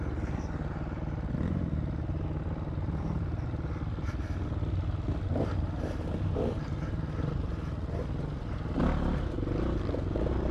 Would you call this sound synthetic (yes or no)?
no